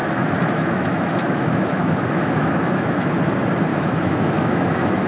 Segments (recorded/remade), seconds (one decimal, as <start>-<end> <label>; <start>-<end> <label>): 0.0-3.1 remade; 3.1-3.7 recorded; 3.7-5.1 remade